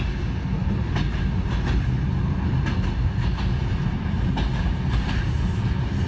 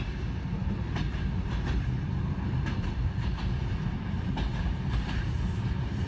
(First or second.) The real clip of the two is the first